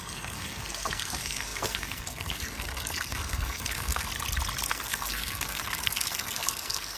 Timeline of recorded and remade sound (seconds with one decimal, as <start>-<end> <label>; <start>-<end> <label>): 0.0-4.1 remade; 4.1-4.7 recorded; 4.7-7.0 remade